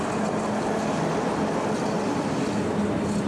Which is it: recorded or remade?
recorded